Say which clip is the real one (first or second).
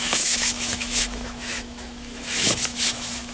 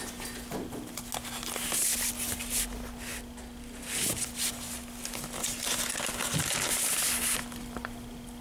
second